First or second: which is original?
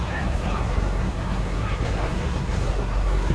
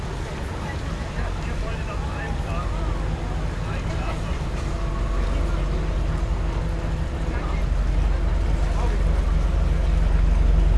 second